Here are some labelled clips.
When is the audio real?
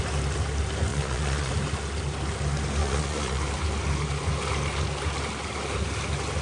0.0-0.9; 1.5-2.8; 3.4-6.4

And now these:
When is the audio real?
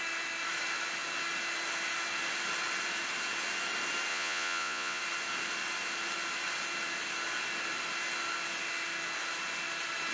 0.0-4.1; 5.0-10.1